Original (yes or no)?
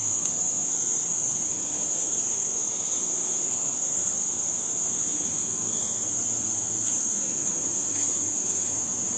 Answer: no